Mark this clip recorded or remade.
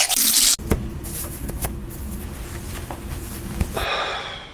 recorded